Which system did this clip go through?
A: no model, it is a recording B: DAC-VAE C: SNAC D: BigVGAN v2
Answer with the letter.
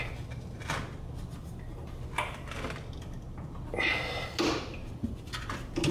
A